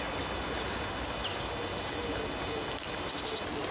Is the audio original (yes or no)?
yes